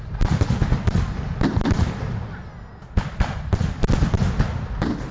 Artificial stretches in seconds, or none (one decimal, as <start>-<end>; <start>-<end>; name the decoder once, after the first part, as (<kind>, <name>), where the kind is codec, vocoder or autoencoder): none